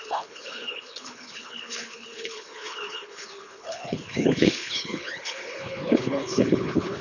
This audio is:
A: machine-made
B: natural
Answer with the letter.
A